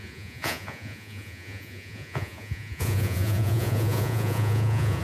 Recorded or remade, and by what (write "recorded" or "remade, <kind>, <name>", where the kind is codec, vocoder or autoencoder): remade, vocoder, Vocos